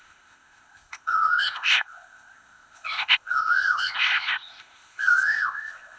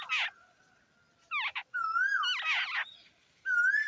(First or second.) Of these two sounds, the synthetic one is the first